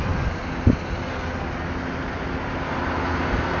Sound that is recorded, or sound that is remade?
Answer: recorded